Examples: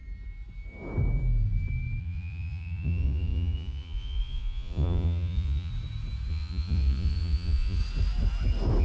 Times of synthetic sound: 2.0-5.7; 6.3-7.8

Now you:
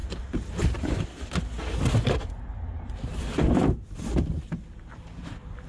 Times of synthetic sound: none

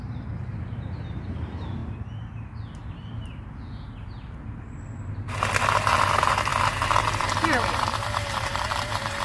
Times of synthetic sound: 0.0-1.8; 5.7-6.5; 7.0-9.2

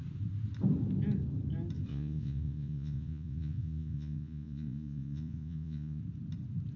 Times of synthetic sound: 1.9-6.0